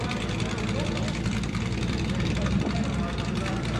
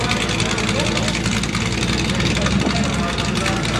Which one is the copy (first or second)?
first